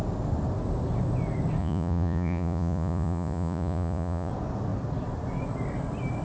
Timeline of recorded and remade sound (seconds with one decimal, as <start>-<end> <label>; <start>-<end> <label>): 0.0-1.6 recorded; 1.6-4.3 remade; 4.3-6.2 recorded